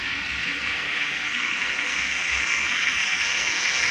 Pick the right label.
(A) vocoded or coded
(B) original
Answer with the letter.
A